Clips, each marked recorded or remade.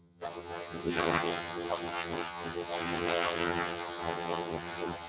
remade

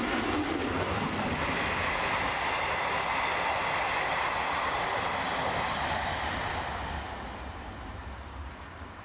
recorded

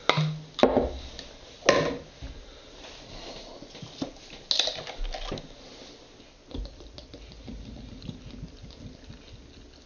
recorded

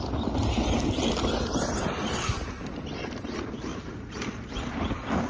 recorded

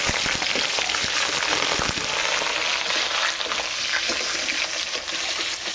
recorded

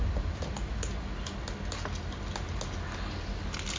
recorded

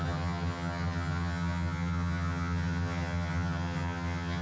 remade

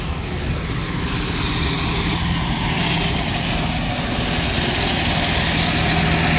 recorded